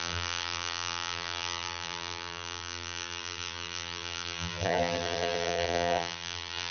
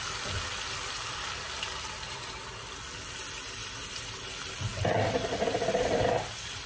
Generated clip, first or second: first